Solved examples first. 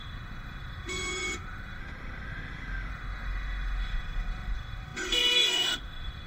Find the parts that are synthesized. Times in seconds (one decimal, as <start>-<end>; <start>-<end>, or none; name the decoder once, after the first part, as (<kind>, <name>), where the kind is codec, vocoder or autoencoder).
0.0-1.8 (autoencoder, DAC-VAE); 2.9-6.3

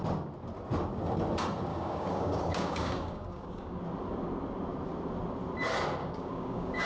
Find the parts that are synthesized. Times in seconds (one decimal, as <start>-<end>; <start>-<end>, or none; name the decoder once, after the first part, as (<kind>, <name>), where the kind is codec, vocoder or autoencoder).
1.7-3.8 (codec, DAC); 6.0-6.9

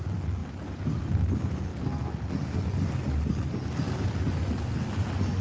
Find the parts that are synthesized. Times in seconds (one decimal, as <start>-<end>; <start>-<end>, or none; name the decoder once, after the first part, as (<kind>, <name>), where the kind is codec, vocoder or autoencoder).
0.4-1.1 (vocoder, BigVGAN v2)

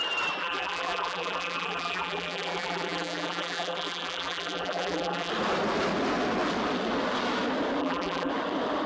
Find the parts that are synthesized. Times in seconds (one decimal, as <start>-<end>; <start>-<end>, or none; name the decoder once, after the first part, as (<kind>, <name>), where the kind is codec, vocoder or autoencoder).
0.4-5.3 (vocoder, BigVGAN v2); 7.8-8.3

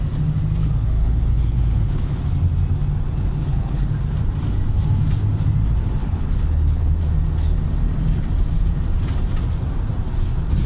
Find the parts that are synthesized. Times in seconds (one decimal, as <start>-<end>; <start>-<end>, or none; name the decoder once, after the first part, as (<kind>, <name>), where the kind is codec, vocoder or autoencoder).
0.6-2.2 (codec, HILCodec); 3.4-4.0; 6.0-7.0

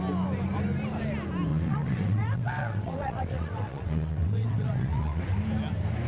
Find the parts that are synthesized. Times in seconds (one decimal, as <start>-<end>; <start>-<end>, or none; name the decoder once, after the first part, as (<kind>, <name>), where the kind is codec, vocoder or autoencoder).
1.5-5.2 (vocoder, WaveNeXt)